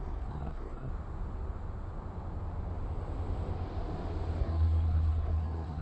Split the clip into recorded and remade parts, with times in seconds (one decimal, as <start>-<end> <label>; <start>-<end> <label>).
0.0-0.9 remade; 0.9-4.4 recorded; 4.4-5.8 remade